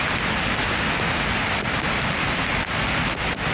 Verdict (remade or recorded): recorded